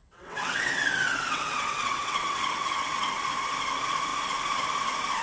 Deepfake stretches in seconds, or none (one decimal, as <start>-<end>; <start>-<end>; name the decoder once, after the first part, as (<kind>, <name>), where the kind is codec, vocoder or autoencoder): 0.0-3.1 (vocoder, WaveNeXt)